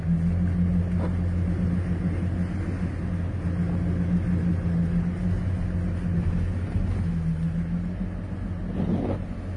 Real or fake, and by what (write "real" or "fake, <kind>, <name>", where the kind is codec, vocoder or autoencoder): real